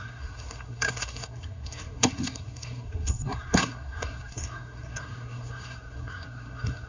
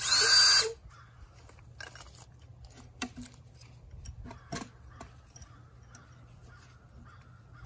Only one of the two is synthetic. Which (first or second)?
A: first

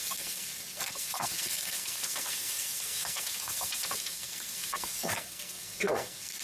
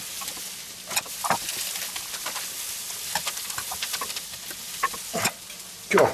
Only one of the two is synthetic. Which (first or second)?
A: first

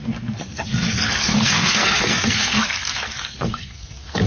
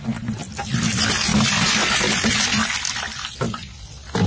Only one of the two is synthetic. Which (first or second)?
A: first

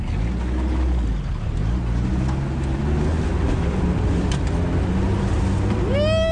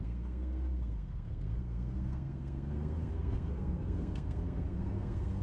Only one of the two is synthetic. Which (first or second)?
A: second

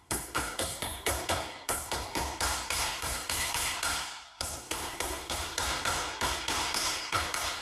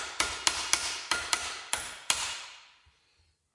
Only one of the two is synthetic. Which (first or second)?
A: first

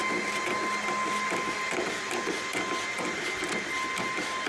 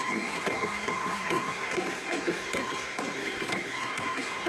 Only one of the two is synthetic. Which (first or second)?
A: second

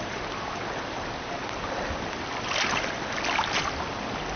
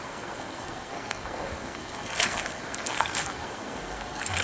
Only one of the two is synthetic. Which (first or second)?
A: second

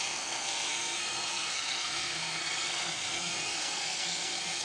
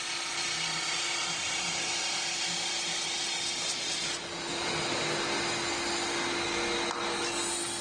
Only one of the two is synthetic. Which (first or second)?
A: first